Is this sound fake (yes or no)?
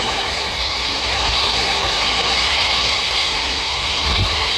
yes